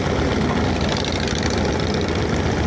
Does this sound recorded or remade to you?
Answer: recorded